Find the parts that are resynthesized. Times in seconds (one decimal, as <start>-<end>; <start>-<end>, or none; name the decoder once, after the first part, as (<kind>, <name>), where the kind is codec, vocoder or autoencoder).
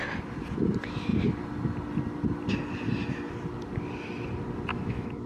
4.7-5.3 (autoencoder, DAC-VAE)